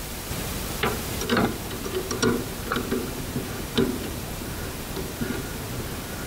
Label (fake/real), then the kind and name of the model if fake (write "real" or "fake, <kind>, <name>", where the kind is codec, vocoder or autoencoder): fake, vocoder, BigVGAN v2